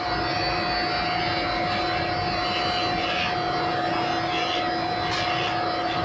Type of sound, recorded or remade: recorded